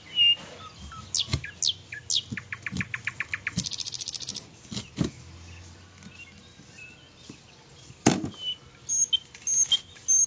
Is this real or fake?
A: real